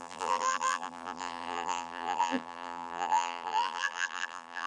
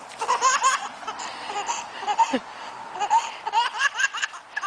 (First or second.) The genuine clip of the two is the second